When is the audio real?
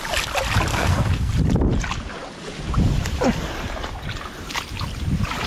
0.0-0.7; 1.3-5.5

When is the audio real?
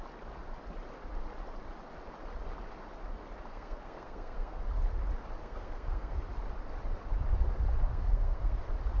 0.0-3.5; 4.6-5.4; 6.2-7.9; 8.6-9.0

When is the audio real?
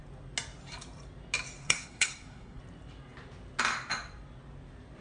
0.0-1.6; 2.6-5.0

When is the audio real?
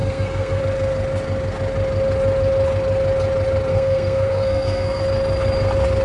0.6-3.7; 5.0-6.0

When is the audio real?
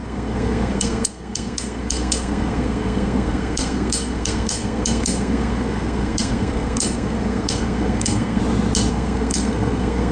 8.4-8.9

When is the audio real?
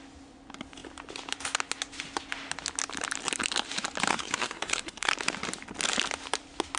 0.0-4.1; 5.1-6.8